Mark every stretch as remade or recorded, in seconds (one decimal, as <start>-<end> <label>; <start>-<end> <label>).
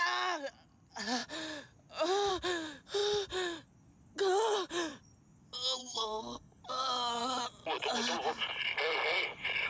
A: 0.0-5.8 recorded; 5.8-6.6 remade; 6.6-9.7 recorded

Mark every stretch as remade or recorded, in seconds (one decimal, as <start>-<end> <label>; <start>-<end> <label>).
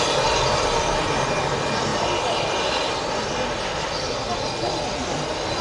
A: 0.0-5.6 recorded